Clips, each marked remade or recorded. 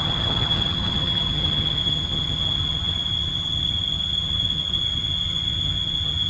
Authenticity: remade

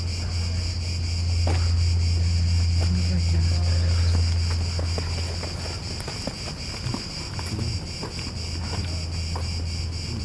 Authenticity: recorded